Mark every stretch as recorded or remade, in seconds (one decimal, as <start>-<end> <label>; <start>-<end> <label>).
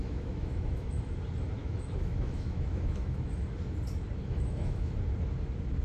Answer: 0.0-1.1 remade; 1.1-1.6 recorded; 1.6-3.3 remade; 3.3-4.2 recorded; 4.2-4.9 remade; 4.9-5.8 recorded